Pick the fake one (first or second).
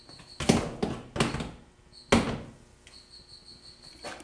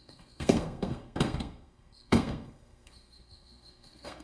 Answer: second